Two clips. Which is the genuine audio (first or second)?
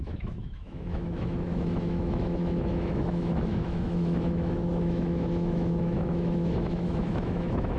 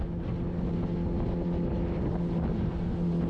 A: second